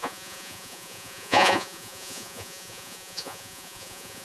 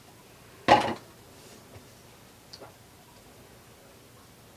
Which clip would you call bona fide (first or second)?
second